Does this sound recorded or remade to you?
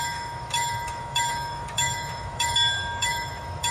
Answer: remade